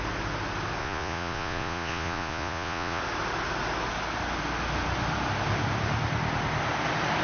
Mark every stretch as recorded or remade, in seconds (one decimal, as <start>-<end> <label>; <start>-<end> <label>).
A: 0.0-0.8 recorded; 0.8-3.0 remade; 3.0-7.2 recorded